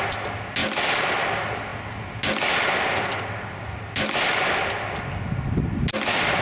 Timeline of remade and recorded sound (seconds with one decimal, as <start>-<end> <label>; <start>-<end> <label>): 0.0-6.4 recorded

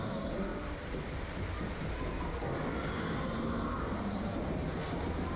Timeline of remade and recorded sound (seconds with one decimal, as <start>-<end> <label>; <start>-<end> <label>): 0.0-0.5 remade; 0.5-3.7 recorded; 3.7-5.4 remade